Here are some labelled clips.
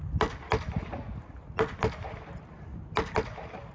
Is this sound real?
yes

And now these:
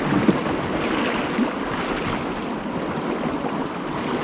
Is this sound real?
yes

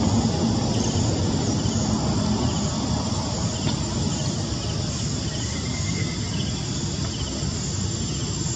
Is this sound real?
yes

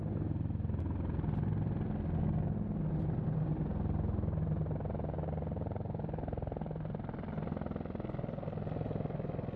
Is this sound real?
yes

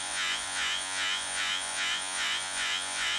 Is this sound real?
no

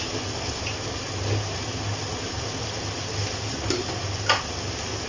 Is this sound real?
yes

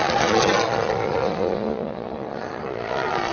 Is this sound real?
no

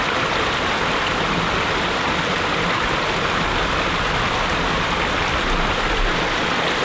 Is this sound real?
yes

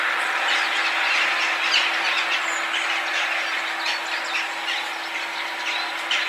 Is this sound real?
yes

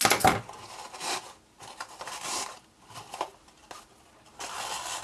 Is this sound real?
yes